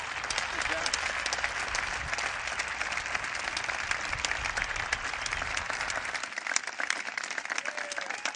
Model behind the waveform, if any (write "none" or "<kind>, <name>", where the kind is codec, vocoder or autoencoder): none